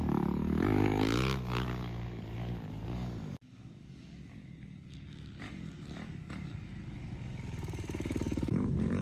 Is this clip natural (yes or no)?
no